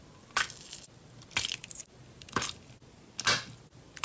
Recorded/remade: recorded